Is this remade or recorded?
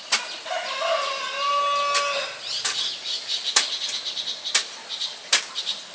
recorded